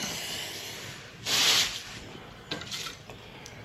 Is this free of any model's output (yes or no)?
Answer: yes